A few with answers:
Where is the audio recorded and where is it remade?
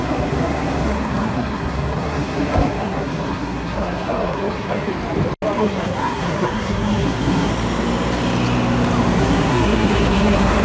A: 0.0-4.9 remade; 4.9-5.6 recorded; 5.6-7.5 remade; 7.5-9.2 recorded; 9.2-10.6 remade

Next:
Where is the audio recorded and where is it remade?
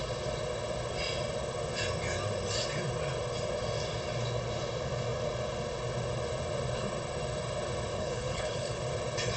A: 0.0-7.9 recorded; 7.9-8.8 remade; 8.8-9.4 recorded